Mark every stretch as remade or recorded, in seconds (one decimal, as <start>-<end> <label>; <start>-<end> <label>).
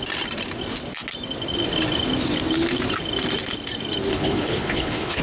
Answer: 0.0-4.1 recorded; 4.1-5.2 remade